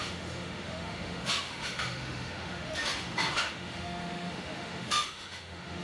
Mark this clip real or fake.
fake